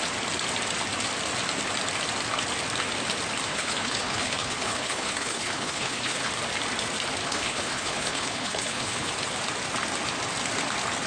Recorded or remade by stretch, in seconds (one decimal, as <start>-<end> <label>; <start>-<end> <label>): 0.0-3.5 recorded; 3.5-6.3 remade; 6.3-7.2 recorded; 7.2-9.1 remade; 9.1-11.1 recorded